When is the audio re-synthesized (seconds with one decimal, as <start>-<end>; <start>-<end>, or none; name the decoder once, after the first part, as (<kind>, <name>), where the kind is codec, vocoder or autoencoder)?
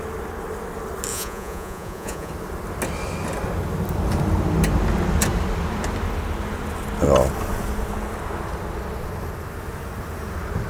1.1-2.3 (vocoder, Vocos)